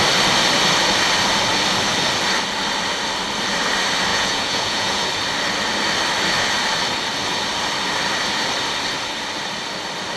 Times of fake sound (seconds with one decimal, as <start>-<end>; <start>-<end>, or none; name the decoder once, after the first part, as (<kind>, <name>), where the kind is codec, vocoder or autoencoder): 4.1-5.0 (vocoder, Vocos)